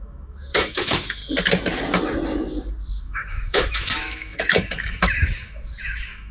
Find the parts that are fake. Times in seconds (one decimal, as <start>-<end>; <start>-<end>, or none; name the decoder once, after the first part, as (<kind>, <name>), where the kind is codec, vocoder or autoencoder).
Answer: 0.0-1.2 (autoencoder, DAC-VAE); 3.0-6.3